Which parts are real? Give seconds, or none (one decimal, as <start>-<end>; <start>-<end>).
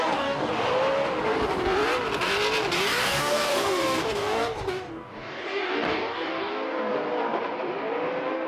0.5-2.9; 6.5-8.5